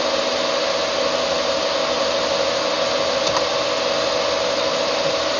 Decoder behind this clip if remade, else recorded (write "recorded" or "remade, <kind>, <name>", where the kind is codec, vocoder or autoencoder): recorded